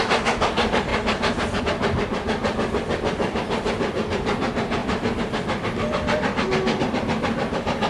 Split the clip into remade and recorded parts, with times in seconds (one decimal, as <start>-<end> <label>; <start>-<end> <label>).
0.0-0.9 remade; 0.9-1.6 recorded; 1.6-7.9 remade